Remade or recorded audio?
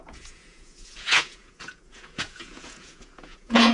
remade